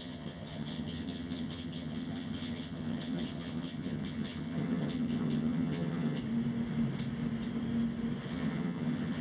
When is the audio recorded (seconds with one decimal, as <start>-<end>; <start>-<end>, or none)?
6.2-8.3